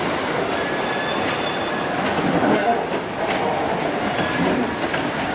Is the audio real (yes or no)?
yes